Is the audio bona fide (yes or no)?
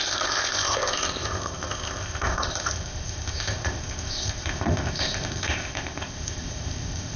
no